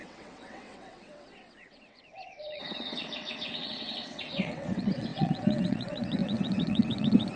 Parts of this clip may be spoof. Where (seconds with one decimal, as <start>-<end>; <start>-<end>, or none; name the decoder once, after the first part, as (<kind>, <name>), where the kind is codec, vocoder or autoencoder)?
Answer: 0.0-7.4 (vocoder, WaveNeXt)